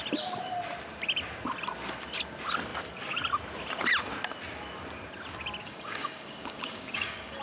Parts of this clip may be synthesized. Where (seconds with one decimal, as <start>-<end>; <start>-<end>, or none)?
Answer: 5.6-7.4